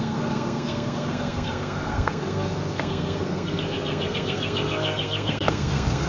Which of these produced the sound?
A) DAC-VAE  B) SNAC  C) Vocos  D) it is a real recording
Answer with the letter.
B